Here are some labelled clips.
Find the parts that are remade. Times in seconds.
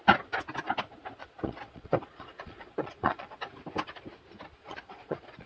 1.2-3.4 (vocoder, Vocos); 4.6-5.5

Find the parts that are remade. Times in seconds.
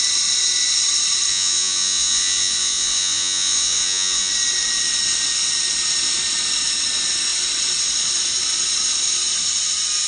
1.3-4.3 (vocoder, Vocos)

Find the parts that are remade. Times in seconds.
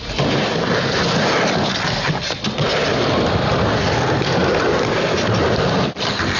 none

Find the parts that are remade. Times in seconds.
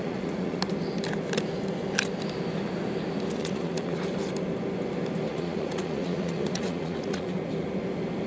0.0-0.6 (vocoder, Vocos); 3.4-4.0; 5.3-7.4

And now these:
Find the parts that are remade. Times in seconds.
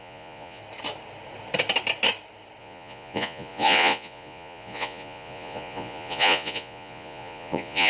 0.0-0.6 (vocoder, Vocos); 2.6-7.9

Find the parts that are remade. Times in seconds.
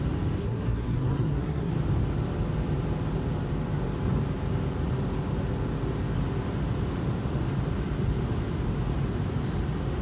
0.4-1.7 (codec, SNAC)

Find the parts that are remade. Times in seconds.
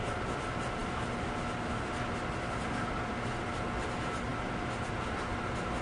none